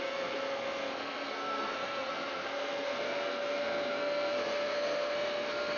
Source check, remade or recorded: remade